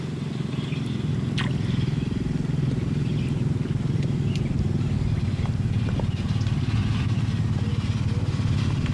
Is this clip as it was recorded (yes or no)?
yes